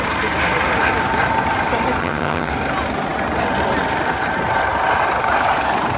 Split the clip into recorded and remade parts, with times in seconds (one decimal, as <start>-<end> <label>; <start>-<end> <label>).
0.0-2.0 recorded; 2.0-2.5 remade; 2.5-6.0 recorded